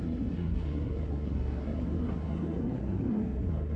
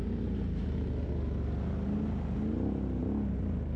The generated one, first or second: first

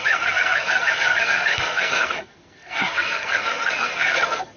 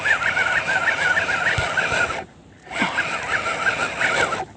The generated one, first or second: first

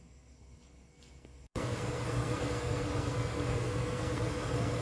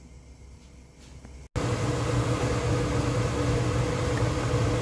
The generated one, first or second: first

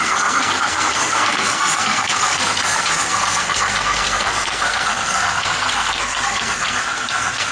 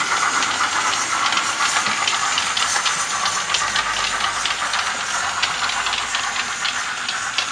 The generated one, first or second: first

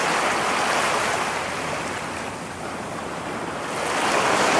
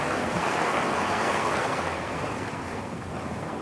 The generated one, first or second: second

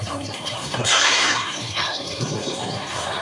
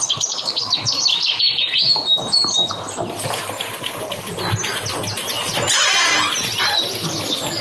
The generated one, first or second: first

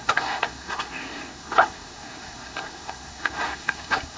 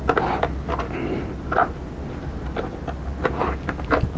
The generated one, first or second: first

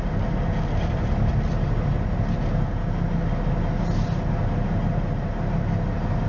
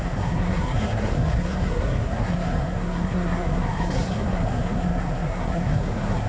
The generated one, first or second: second